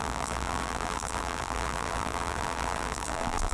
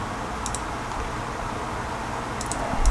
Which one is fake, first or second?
first